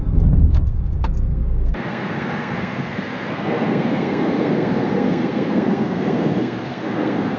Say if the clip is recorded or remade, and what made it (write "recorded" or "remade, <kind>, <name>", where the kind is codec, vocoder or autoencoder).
remade, codec, SNAC